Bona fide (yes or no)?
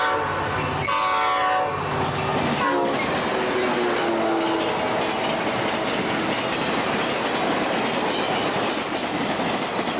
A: yes